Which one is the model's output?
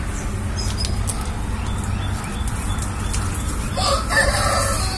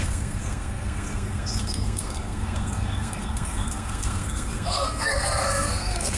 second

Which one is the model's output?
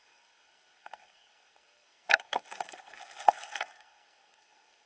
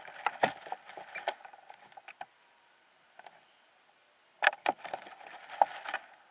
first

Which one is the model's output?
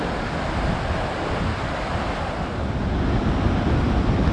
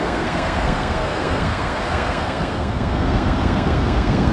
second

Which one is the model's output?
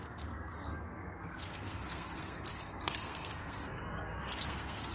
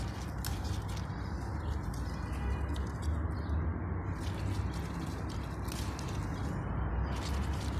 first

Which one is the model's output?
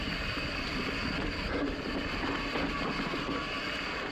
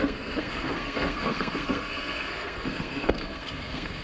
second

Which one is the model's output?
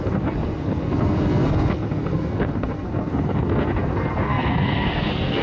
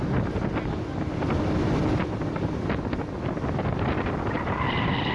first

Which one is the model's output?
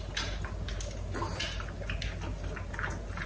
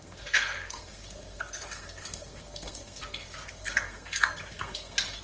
second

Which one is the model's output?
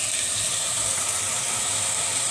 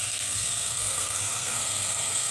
second